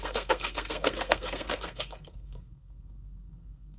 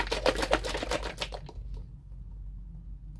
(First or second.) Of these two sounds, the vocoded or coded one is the first